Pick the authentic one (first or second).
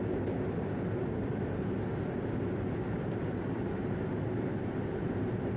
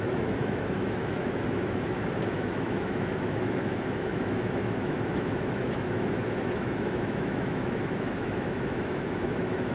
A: first